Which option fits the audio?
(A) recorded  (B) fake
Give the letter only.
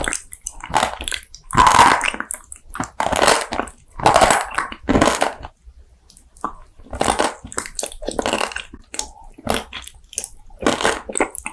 A